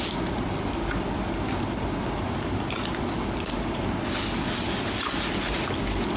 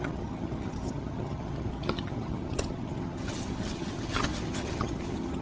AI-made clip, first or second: second